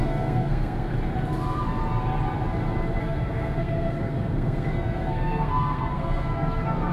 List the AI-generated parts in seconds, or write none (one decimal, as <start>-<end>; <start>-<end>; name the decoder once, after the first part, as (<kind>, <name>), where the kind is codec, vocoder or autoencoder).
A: 0.0-0.9 (codec, SNAC); 3.0-6.9